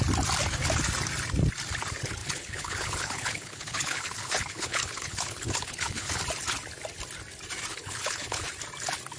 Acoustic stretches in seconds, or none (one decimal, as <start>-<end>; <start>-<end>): 0.0-2.2; 6.2-7.7; 8.5-9.2